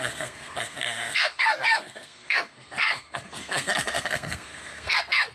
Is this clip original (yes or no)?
no